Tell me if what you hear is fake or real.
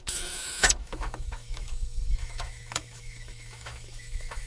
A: fake